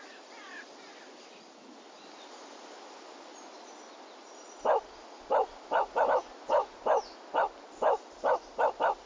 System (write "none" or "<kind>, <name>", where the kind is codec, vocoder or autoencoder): none